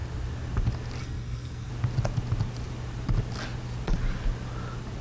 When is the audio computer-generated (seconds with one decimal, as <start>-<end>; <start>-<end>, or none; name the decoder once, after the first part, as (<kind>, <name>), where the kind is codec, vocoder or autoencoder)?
1.0-1.7 (codec, SNAC)